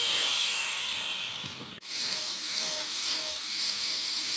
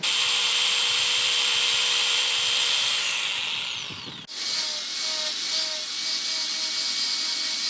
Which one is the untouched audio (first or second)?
second